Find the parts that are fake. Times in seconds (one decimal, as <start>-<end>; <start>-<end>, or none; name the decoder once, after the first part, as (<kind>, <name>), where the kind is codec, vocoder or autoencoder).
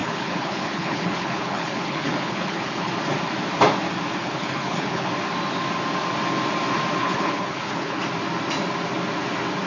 0.0-2.9 (codec, HILCodec); 4.2-5.1; 7.0-8.0